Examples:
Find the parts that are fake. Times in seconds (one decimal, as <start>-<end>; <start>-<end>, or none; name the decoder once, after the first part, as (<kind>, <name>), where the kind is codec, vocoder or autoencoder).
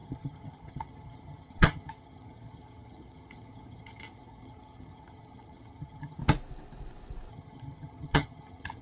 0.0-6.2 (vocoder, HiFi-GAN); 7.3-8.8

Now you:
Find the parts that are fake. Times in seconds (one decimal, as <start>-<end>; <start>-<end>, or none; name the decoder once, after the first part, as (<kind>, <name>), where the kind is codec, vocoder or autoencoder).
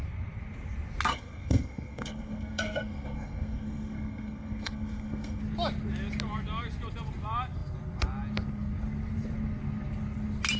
1.1-5.4 (codec, SNAC)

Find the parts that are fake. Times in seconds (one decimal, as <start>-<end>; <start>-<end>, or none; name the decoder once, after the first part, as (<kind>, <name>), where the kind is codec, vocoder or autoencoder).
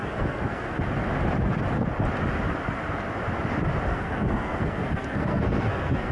0.0-0.8 (codec, SNAC); 3.9-6.1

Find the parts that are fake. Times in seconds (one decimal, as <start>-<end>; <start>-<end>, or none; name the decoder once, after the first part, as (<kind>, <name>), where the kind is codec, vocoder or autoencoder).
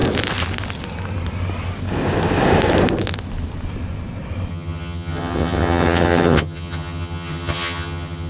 4.5-8.3 (vocoder, HiFi-GAN)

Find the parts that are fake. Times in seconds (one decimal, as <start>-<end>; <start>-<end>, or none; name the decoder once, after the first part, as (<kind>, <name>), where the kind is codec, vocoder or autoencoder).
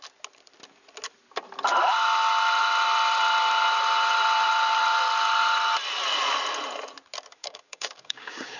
7.4-8.6 (codec, DAC)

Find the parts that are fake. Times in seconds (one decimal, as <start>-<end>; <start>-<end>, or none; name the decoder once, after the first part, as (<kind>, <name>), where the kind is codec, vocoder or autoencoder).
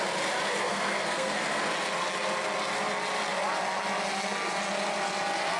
0.6-1.4 (codec, SNAC)